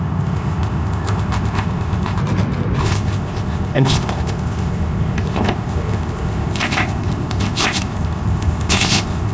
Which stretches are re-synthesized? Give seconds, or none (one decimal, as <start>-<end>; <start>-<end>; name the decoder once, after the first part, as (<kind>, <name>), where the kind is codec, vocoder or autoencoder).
0.0-2.2 (codec, ZipCodec); 2.8-9.3